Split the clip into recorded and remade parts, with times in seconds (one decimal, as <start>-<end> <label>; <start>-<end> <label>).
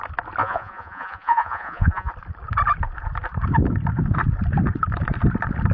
0.0-0.4 recorded; 0.4-2.1 remade; 2.1-5.7 recorded